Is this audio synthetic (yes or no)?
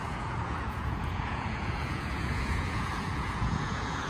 yes